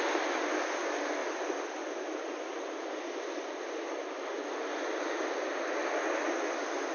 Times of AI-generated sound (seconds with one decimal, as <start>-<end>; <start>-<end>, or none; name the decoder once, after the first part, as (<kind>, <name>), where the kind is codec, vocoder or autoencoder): none